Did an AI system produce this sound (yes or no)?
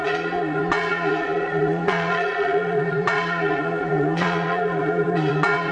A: yes